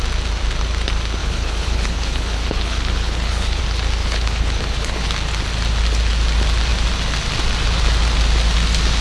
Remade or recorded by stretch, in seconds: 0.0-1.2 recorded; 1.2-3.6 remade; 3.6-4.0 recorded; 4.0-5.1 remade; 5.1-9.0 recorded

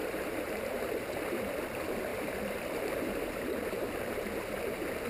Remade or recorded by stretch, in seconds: 0.0-0.9 remade; 0.9-2.1 recorded; 2.1-4.0 remade; 4.0-5.1 recorded

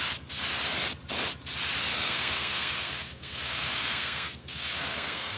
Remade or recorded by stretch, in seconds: 0.0-1.9 recorded; 1.9-5.4 remade

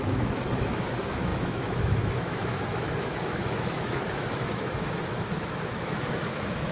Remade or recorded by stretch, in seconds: 0.0-6.7 remade

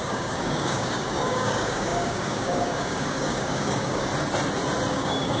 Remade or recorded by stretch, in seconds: 0.0-4.1 remade; 4.1-4.9 recorded; 4.9-5.4 remade

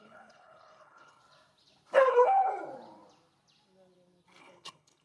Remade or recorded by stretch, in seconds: 0.0-1.2 remade; 1.2-2.1 recorded; 2.1-2.5 remade; 2.5-4.4 recorded; 4.4-5.0 remade